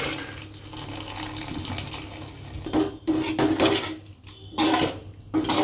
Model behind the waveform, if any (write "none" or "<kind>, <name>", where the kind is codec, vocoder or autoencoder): none